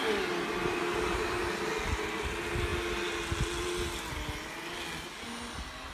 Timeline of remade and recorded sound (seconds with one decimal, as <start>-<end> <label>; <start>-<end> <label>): 0.0-0.6 recorded; 0.6-1.4 remade; 1.4-5.9 recorded